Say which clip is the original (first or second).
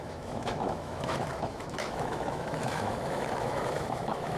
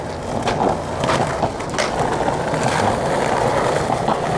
second